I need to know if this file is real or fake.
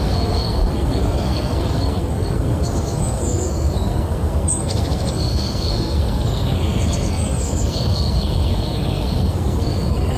fake